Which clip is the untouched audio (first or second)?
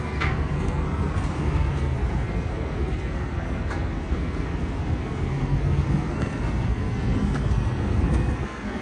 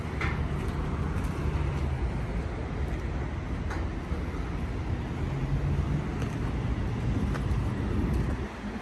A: second